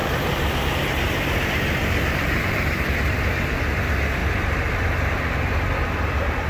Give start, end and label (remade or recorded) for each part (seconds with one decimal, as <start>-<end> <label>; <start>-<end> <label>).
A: 0.0-0.8 remade; 0.8-1.8 recorded; 1.8-3.3 remade; 3.3-4.2 recorded; 4.2-5.3 remade; 5.3-6.5 recorded